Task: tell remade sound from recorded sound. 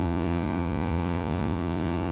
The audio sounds remade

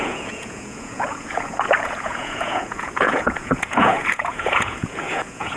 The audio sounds remade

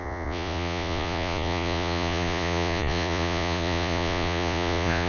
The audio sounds remade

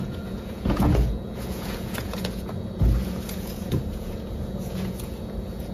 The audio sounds remade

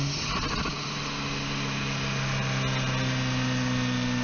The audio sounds recorded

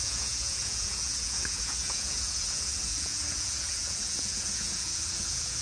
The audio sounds remade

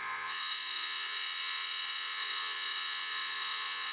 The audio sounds remade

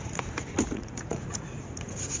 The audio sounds remade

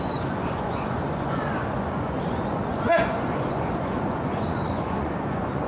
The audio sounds remade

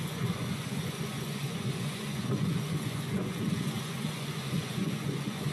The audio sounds remade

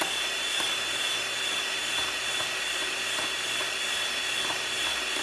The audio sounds recorded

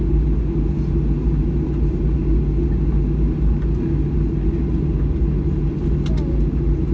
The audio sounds recorded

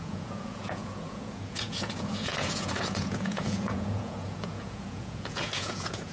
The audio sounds remade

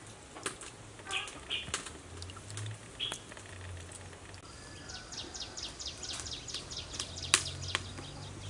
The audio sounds recorded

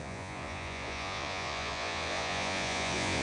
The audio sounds remade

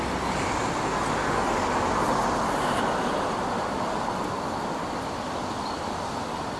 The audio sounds recorded